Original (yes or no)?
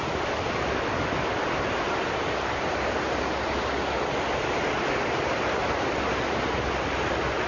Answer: yes